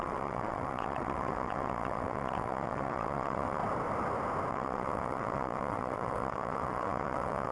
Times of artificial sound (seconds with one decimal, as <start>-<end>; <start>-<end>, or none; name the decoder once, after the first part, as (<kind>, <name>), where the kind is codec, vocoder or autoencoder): 0.0-3.6 (vocoder, WaveNeXt); 4.5-7.5